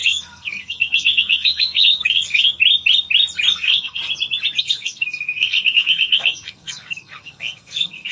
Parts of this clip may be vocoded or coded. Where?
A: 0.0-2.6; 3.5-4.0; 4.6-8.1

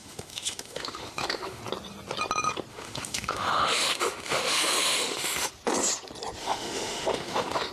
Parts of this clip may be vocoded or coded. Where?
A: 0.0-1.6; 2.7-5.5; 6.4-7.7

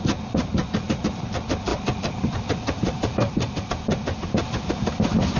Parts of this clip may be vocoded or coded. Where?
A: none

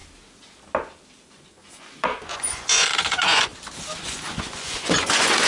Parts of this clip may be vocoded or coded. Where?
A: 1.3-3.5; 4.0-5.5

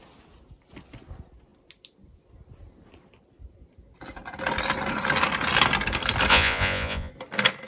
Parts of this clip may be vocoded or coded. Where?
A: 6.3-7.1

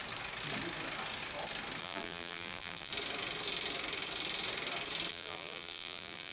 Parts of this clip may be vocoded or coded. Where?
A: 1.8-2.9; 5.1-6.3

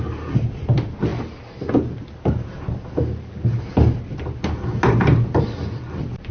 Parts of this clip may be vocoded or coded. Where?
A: none

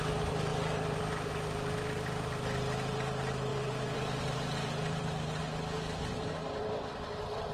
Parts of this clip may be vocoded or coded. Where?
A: 0.5-1.0; 3.5-5.4